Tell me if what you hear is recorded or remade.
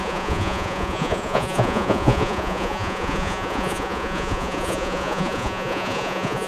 remade